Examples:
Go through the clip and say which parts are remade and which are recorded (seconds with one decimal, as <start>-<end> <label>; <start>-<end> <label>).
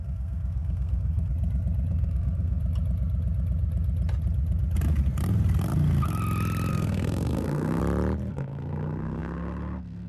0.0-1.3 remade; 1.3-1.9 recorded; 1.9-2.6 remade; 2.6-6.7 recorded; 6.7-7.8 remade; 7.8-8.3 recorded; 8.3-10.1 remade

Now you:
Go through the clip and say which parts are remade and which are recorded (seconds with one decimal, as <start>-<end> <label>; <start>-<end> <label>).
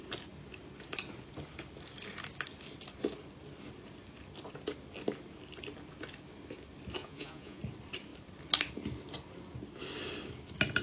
0.0-7.0 recorded; 7.0-7.6 remade; 7.6-10.8 recorded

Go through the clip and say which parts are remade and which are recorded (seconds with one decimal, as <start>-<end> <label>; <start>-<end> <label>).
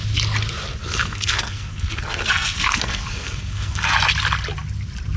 0.0-0.8 recorded; 0.8-3.9 remade; 3.9-5.2 recorded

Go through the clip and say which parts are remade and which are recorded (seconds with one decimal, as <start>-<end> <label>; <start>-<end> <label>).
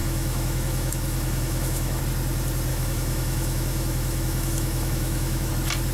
0.0-2.0 remade; 2.0-2.7 recorded; 2.7-5.5 remade; 5.5-5.9 recorded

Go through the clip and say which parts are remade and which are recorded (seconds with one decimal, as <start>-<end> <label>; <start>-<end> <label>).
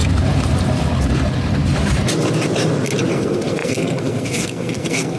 0.0-3.1 recorded; 3.1-5.2 remade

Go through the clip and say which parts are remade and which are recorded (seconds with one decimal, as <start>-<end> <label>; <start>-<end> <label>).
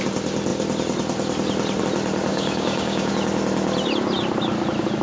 0.0-2.3 recorded; 2.3-3.1 remade; 3.1-5.0 recorded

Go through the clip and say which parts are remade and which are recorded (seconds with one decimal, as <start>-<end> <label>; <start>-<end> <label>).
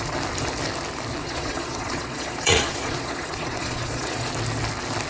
0.0-1.2 recorded; 1.2-4.3 remade; 4.3-5.1 recorded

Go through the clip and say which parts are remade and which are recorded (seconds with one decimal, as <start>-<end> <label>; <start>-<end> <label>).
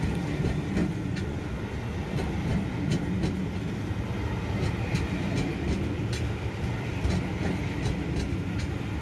0.0-0.8 recorded; 0.8-1.4 remade; 1.4-9.0 recorded